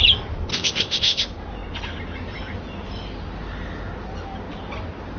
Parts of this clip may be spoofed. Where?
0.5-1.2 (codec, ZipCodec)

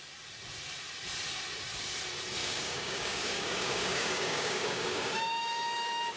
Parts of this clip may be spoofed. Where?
2.4-6.2 (codec, DAC)

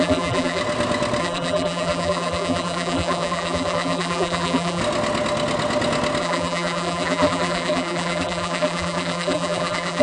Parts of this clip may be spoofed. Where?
0.0-0.6 (vocoder, BigVGAN v2); 1.2-4.8; 6.2-10.0

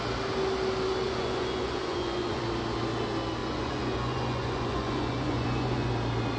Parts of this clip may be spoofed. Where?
1.0-2.4 (vocoder, Vocos); 3.4-5.9